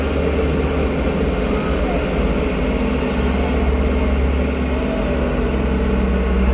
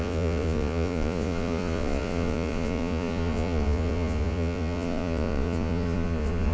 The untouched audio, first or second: first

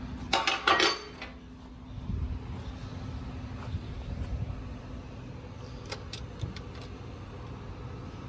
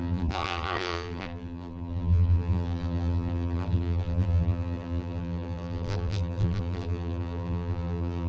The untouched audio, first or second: first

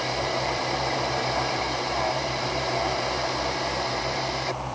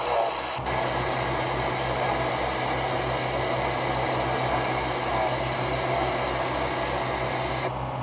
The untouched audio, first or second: second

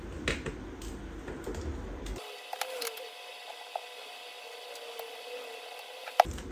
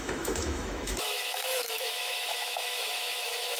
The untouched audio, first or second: first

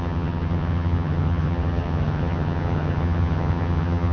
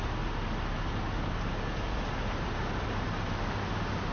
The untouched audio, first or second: second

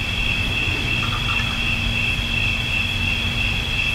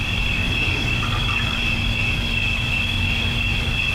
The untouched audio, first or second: first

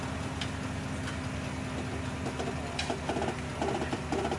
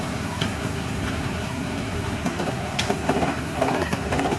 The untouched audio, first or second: first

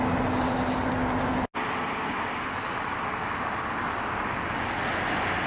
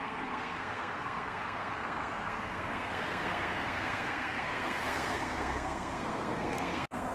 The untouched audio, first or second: first